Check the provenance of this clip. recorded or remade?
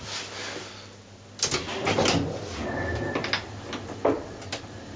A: recorded